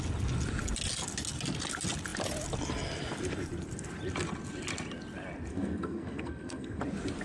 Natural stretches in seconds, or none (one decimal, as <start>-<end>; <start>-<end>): 0.0-5.5; 6.8-7.2